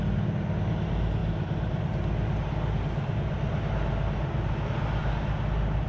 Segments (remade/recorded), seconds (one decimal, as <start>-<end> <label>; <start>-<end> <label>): 0.0-5.9 recorded